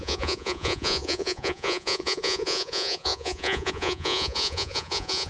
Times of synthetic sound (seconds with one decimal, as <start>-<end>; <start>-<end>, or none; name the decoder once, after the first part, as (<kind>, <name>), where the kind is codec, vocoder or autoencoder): 0.0-5.3 (vocoder, Vocos)